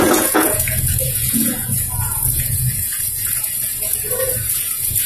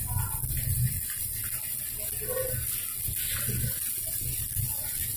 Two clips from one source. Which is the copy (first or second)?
first